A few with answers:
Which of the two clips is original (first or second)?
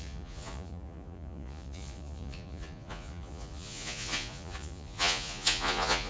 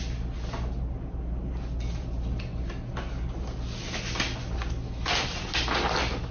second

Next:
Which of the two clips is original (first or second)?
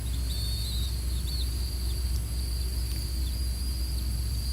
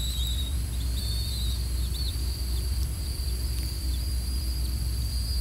first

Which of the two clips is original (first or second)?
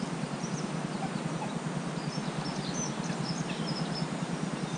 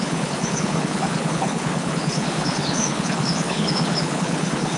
first